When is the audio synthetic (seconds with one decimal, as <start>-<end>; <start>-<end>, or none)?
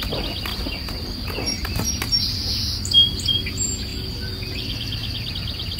none